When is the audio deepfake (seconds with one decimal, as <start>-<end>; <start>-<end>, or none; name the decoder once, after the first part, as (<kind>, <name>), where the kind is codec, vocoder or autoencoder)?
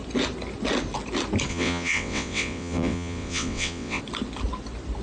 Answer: 1.5-4.0 (vocoder, WaveNeXt)